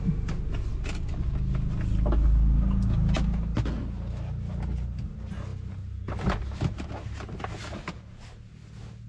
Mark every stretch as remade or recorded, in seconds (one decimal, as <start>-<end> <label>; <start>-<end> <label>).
0.0-9.1 recorded

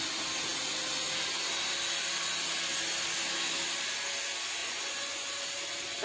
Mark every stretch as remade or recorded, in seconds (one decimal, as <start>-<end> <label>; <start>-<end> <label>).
0.0-4.6 recorded; 4.6-5.3 remade; 5.3-6.0 recorded

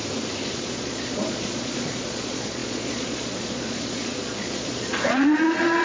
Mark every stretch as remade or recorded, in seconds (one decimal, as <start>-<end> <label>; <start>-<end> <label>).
0.0-0.5 recorded; 0.5-5.8 remade

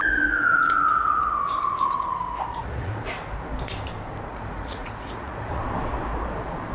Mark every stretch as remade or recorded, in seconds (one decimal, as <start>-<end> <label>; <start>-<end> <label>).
0.0-0.5 recorded; 0.5-1.2 remade; 1.2-2.5 recorded; 2.5-3.1 remade; 3.1-4.3 recorded; 4.3-5.6 remade; 5.6-6.7 recorded

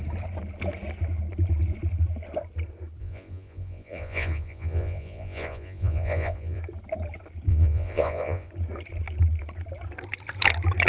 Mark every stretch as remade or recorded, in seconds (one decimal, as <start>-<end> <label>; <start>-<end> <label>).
0.0-3.0 recorded; 3.0-6.6 remade; 6.6-7.5 recorded; 7.5-8.5 remade; 8.5-10.9 recorded

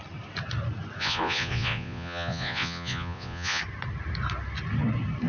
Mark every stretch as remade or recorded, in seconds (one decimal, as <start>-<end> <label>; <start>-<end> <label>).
0.0-1.0 recorded; 1.0-3.6 remade; 3.6-5.3 recorded

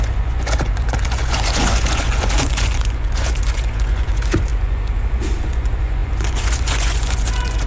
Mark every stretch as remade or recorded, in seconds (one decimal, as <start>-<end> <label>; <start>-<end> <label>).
0.0-7.7 remade